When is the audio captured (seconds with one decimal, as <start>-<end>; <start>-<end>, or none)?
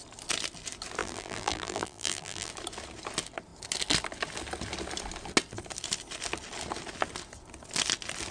0.0-1.0; 2.5-8.3